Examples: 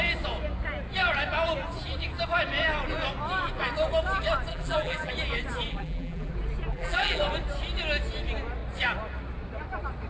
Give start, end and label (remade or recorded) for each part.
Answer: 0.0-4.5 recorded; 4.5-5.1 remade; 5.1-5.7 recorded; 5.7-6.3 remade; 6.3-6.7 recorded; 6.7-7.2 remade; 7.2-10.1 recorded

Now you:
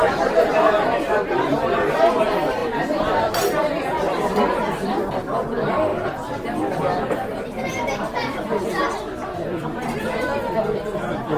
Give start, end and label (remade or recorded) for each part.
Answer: 0.0-5.9 remade; 5.9-6.8 recorded; 6.8-11.4 remade

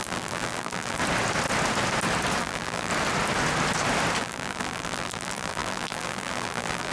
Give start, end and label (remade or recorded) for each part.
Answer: 0.0-1.0 remade; 1.0-2.4 recorded; 2.4-2.9 remade; 2.9-4.2 recorded; 4.2-6.9 remade

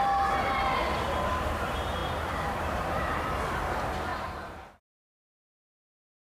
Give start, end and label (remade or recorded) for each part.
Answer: 0.0-2.0 recorded; 2.0-3.2 remade; 3.2-4.1 recorded; 4.1-4.9 remade; 4.9-6.2 recorded